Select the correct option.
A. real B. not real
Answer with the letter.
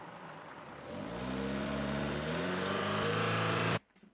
B